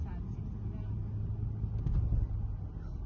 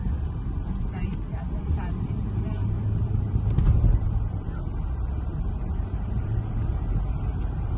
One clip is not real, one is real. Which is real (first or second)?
first